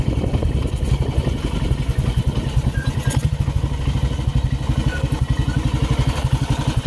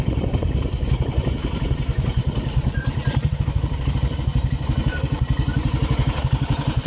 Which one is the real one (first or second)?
first